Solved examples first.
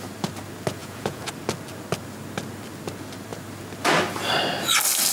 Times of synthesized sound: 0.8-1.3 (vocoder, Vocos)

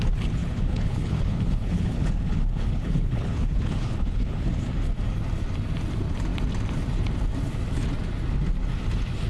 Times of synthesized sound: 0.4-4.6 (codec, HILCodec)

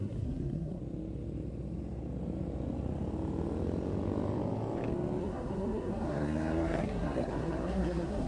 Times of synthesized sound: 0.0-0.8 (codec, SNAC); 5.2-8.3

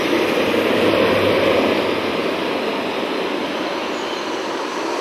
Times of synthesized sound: 2.2-3.1 (vocoder, BigVGAN v2)